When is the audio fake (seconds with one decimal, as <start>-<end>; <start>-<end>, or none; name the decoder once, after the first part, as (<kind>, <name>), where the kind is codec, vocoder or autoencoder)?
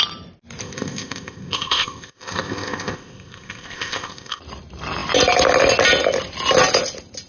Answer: 0.6-4.4 (codec, ZipCodec)